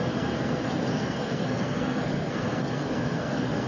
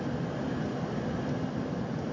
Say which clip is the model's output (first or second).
first